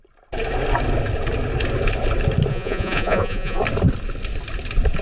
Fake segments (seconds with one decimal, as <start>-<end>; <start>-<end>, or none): 2.5-3.6